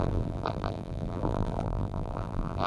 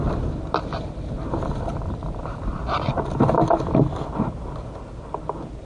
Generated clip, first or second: first